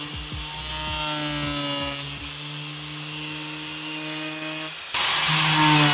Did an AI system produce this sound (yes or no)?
no